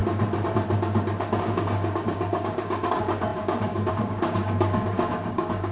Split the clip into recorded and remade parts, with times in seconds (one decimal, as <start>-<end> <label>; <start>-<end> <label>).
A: 0.0-1.4 recorded; 1.4-5.7 remade